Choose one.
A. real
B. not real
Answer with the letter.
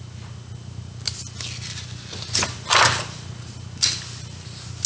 A